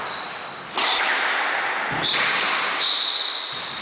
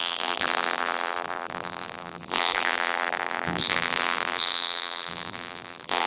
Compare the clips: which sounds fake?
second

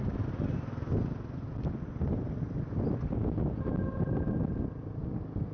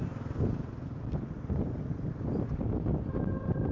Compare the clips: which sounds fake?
second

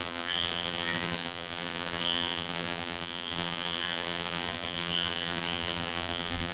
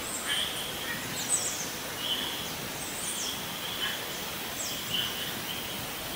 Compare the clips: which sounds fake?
first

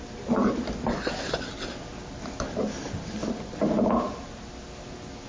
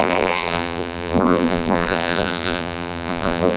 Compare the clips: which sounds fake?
second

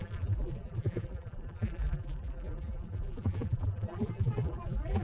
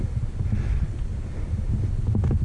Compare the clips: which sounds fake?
first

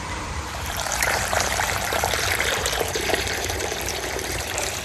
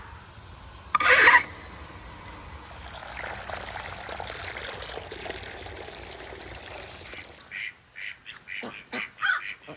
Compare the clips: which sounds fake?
first